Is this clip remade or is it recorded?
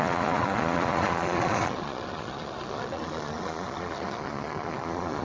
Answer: remade